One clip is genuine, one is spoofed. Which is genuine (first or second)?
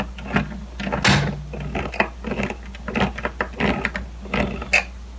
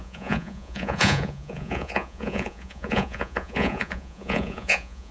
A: first